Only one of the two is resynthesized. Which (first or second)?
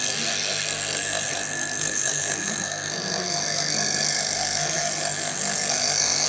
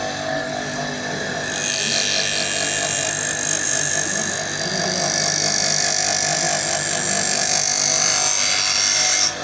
first